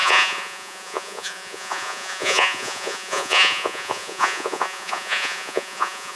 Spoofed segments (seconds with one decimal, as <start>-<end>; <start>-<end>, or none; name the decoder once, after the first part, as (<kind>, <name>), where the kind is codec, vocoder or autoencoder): 0.0-6.2 (vocoder, Vocos)